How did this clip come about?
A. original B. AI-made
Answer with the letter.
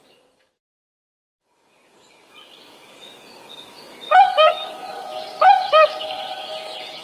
B